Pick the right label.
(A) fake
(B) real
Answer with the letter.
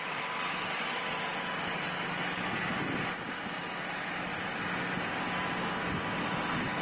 B